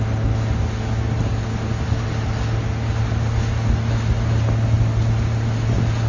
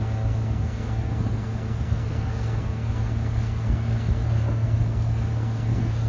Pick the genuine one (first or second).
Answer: first